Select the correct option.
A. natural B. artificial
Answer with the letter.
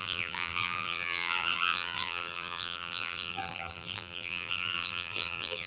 B